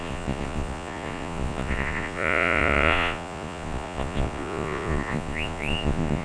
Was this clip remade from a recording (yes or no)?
yes